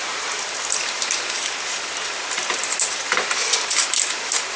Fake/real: real